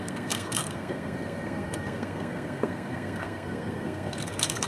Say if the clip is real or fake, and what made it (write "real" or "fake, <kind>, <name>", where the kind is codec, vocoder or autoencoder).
fake, codec, SNAC